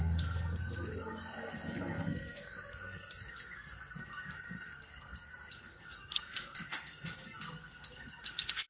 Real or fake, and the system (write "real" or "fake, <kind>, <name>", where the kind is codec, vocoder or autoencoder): fake, codec, SNAC